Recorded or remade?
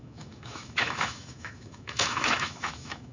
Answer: remade